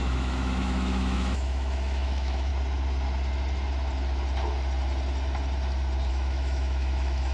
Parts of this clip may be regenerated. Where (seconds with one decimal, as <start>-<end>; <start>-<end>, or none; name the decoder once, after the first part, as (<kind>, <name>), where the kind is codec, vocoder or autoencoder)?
0.0-2.5 (autoencoder, DAC-VAE); 6.1-7.3